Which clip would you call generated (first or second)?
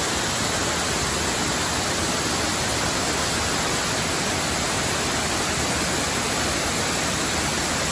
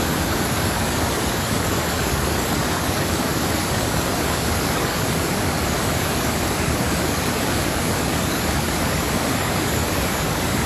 second